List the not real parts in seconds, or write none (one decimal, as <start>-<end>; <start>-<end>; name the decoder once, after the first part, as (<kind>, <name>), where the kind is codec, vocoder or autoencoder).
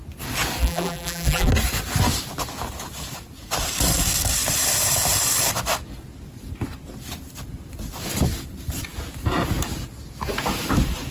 0.6-1.5 (vocoder, BigVGAN v2)